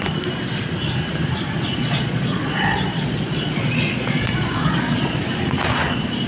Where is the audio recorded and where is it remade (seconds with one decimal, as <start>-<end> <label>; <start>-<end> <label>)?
0.0-1.7 recorded; 1.7-5.2 remade; 5.2-6.3 recorded